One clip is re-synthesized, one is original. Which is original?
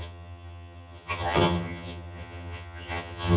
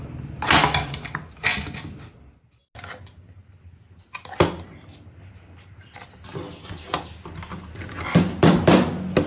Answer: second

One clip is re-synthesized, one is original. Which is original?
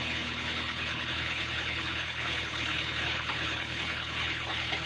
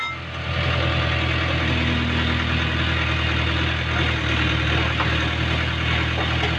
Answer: second